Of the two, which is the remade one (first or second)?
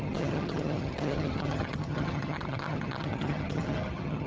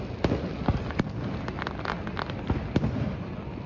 first